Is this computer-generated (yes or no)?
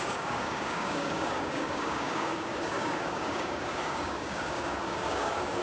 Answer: yes